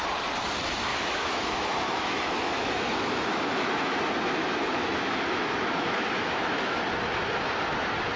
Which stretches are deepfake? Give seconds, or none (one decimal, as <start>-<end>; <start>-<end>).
0.9-4.0; 4.4-6.8